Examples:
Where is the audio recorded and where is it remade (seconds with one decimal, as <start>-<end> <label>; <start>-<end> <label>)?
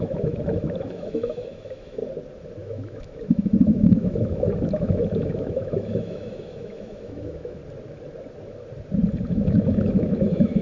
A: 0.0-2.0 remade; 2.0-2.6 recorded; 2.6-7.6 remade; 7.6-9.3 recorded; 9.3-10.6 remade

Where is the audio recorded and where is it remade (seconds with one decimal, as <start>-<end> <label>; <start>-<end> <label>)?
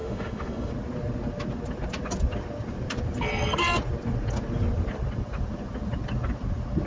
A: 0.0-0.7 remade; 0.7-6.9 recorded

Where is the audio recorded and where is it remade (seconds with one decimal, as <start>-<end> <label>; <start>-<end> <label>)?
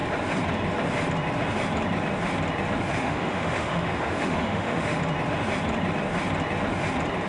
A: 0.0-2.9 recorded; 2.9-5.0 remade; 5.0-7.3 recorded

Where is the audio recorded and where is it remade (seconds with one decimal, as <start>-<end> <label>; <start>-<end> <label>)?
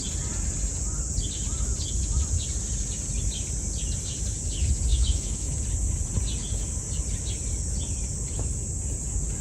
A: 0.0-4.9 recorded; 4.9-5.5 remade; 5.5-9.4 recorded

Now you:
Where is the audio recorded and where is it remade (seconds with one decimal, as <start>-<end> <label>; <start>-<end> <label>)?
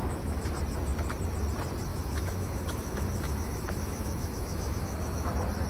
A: 0.0-0.5 remade; 0.5-1.9 recorded; 1.9-5.3 remade; 5.3-5.7 recorded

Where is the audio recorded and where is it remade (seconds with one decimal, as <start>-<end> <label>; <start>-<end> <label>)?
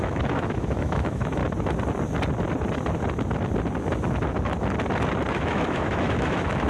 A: 0.0-1.4 remade; 1.4-5.3 recorded; 5.3-6.7 remade